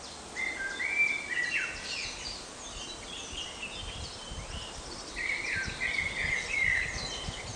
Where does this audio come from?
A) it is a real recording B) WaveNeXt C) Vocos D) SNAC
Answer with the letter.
A